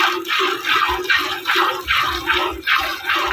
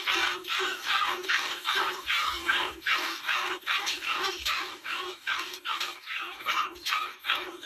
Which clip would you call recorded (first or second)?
first